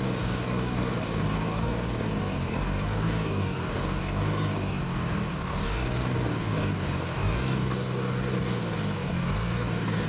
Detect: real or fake fake